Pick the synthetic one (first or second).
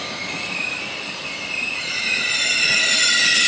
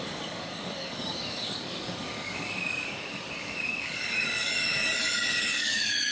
second